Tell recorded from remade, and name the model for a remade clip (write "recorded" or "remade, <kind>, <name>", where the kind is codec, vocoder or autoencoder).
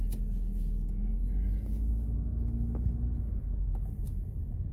recorded